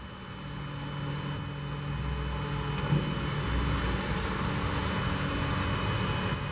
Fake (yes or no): no